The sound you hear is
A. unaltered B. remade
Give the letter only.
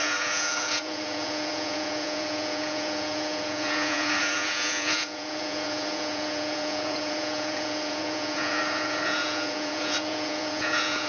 B